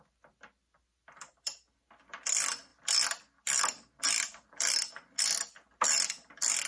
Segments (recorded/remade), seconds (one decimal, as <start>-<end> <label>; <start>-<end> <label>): 0.0-6.7 recorded